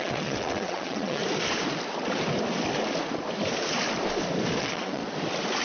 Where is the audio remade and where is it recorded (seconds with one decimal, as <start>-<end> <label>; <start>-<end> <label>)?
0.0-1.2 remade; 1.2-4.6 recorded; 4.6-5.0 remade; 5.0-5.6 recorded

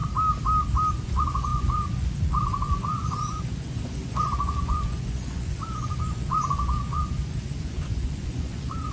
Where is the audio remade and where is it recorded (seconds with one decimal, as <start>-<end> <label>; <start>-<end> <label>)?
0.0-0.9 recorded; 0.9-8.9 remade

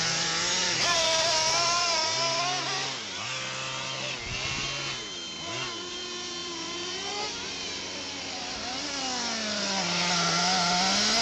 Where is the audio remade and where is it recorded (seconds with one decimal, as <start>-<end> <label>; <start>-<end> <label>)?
0.0-0.6 recorded; 0.6-2.4 remade; 2.4-6.4 recorded; 6.4-8.2 remade; 8.2-11.2 recorded